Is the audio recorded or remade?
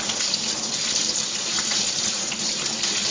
recorded